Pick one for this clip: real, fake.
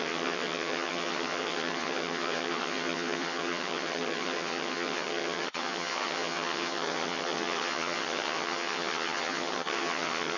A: fake